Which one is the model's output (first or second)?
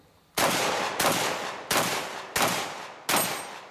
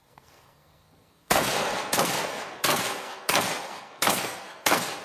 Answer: second